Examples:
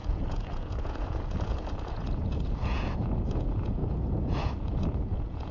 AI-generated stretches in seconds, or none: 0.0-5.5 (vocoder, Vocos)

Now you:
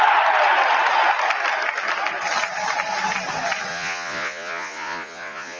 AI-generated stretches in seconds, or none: 3.7-5.6 (vocoder, Vocos)

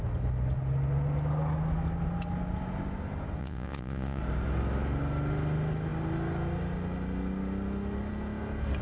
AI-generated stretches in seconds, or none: 3.4-4.2 (vocoder, Vocos)

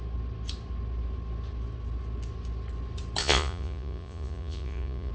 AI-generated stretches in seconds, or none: 3.2-5.1 (vocoder, Vocos)